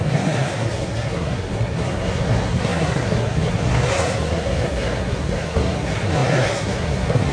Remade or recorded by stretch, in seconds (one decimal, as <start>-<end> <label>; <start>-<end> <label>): 0.0-7.3 remade